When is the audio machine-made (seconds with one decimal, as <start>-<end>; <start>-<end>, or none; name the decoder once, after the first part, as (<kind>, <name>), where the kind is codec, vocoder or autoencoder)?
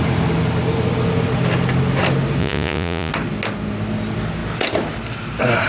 2.4-3.1 (vocoder, Vocos)